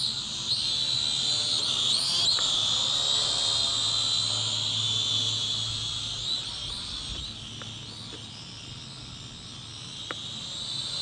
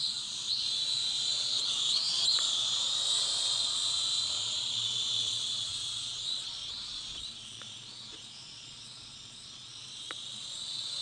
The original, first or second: first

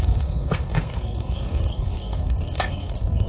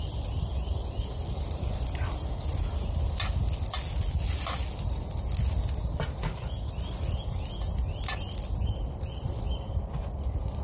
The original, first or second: second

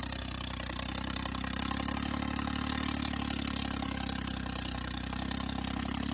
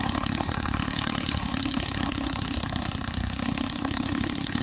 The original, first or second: first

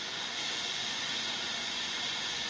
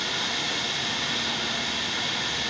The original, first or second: second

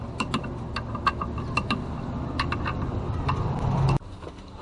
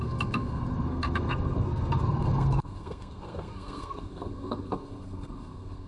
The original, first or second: first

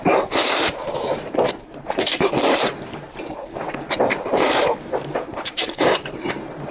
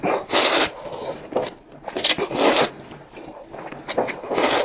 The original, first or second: second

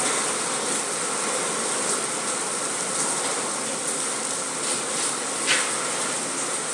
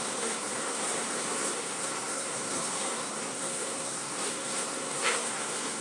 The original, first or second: first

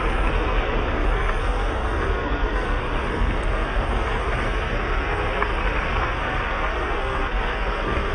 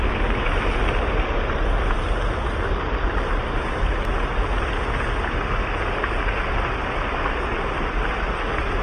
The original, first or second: second